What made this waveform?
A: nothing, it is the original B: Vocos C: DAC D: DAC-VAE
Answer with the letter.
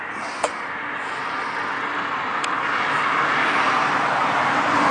A